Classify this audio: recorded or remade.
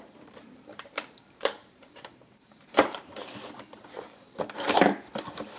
remade